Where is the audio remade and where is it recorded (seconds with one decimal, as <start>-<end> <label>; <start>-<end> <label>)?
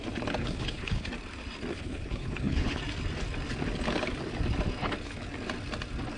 0.0-0.4 recorded; 0.4-1.1 remade; 1.1-1.7 recorded; 1.7-2.8 remade; 2.8-6.2 recorded